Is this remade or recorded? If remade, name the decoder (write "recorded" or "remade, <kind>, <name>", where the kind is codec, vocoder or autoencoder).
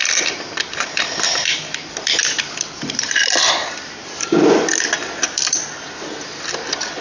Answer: remade, vocoder, BigVGAN v2